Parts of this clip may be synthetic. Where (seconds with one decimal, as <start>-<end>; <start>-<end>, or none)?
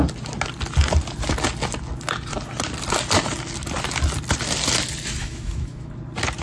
5.2-5.9